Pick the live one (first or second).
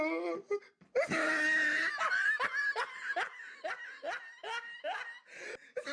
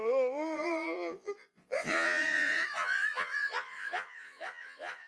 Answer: first